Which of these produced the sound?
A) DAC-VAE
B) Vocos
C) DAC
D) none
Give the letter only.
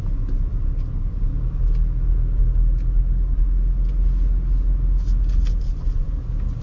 D